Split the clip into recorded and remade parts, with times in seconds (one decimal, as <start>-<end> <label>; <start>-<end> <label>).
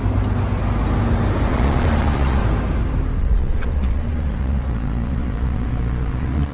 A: 0.0-1.5 recorded; 1.5-2.4 remade; 2.4-3.2 recorded; 3.2-6.5 remade